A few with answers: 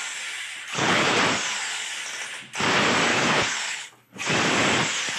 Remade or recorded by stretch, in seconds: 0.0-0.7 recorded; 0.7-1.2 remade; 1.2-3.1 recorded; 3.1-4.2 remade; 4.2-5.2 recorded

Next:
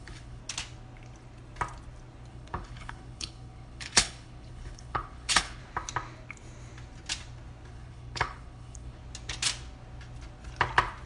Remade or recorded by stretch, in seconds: 0.0-0.4 remade; 0.4-2.3 recorded; 2.3-5.6 remade; 5.6-7.7 recorded; 7.7-9.0 remade; 9.0-11.1 recorded

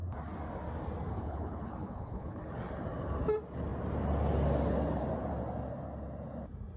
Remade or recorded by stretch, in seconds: 0.0-1.1 recorded; 1.1-2.4 remade; 2.4-6.8 recorded

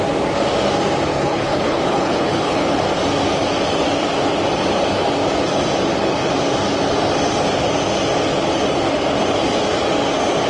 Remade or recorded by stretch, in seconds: 0.0-1.1 recorded; 1.1-2.8 remade; 2.8-10.5 recorded

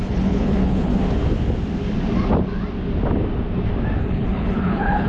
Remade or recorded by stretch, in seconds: 0.0-0.9 remade; 0.9-4.0 recorded; 4.0-5.1 remade

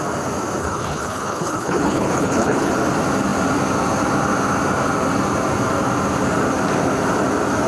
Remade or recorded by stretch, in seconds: 0.0-0.6 recorded; 0.6-2.7 remade; 2.7-7.7 recorded

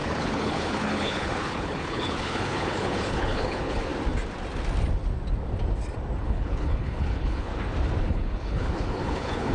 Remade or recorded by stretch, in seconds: 0.0-3.9 remade; 3.9-6.2 recorded; 6.2-7.5 remade; 7.5-8.0 recorded; 8.0-9.5 remade

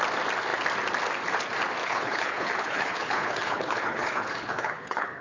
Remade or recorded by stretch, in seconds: 0.0-1.8 recorded; 1.8-5.2 remade